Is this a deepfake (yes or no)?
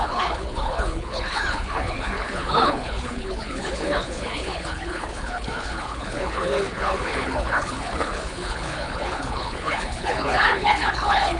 yes